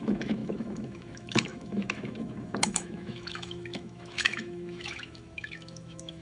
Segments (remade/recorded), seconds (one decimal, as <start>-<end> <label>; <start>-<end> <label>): 0.0-6.2 remade